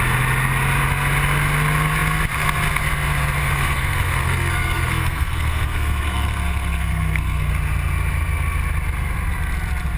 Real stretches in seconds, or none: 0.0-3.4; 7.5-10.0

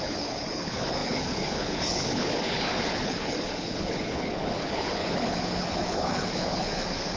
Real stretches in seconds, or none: none

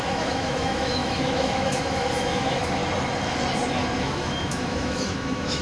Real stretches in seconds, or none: 2.8-4.0

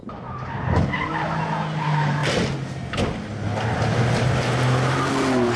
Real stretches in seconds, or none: 0.0-5.6

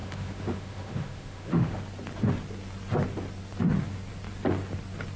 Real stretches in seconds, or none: 1.8-5.2

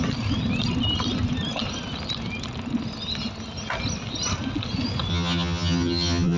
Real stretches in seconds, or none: 0.0-5.1

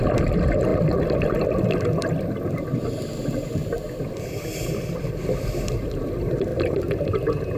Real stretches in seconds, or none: 0.0-7.6